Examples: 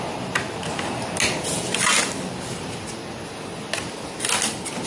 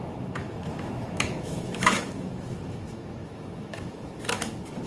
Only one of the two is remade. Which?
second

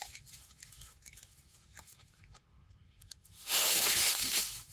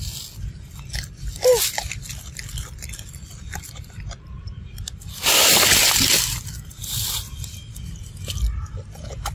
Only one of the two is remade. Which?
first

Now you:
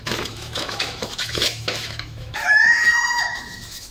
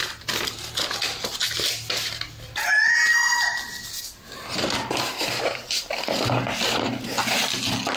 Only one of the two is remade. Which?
first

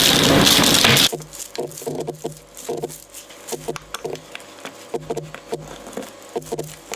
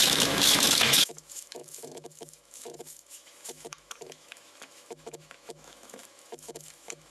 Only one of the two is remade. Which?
second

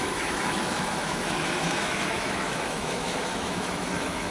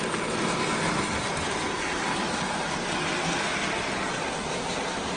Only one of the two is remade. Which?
first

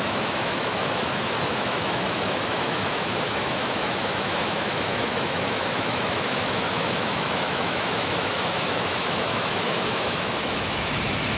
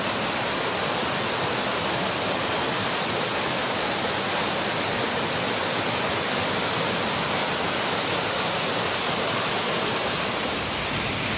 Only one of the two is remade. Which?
first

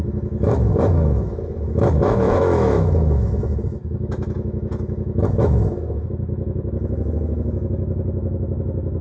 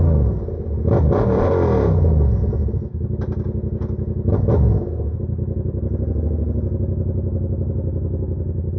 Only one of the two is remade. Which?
first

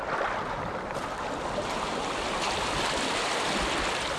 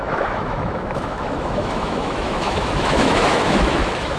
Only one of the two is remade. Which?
second